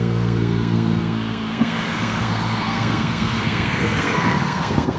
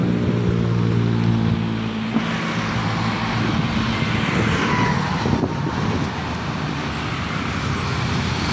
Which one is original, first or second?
second